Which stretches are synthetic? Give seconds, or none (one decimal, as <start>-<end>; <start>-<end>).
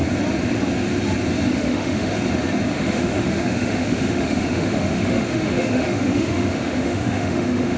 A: 1.5-2.1; 2.7-7.8